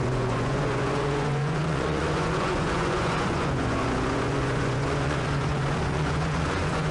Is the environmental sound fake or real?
fake